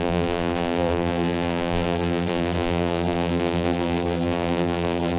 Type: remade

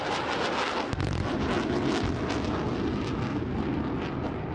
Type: recorded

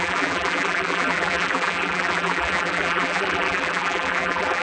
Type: remade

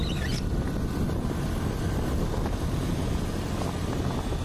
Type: recorded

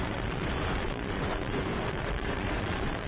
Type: remade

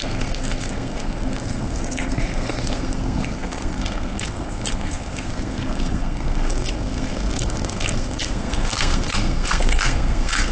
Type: remade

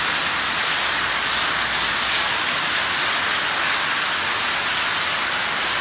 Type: recorded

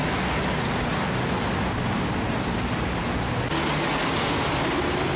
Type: recorded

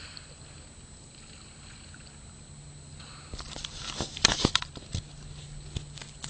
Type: recorded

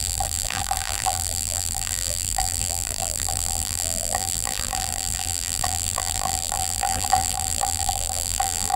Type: remade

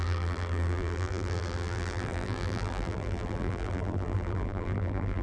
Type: remade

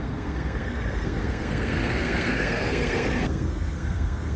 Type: remade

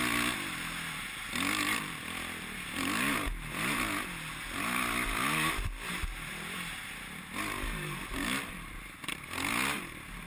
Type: recorded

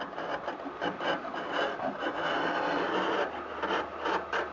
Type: recorded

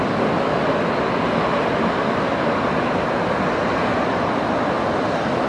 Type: recorded